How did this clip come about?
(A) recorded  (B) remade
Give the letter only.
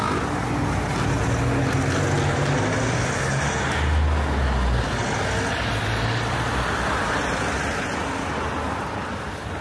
A